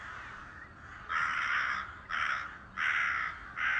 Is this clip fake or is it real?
real